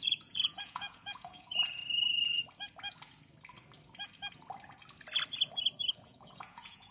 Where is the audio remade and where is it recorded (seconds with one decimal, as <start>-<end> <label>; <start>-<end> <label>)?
0.0-1.8 remade; 1.8-5.9 recorded; 5.9-6.9 remade